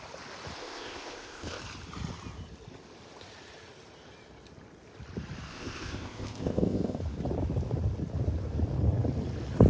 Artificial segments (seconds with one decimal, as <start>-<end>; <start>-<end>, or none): 0.6-1.6; 5.5-7.0

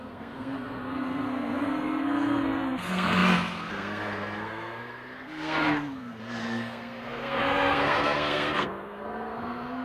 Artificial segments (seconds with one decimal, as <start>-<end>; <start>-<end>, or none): 0.0-9.8

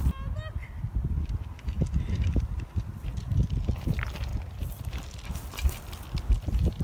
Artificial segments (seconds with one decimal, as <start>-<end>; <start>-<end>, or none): none

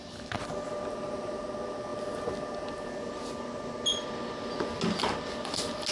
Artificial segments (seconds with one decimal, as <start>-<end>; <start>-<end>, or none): none

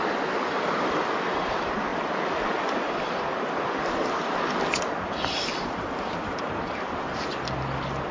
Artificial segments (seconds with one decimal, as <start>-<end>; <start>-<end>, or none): 5.5-6.6

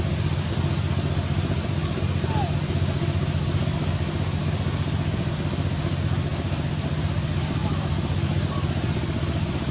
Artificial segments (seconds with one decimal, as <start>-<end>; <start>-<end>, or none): none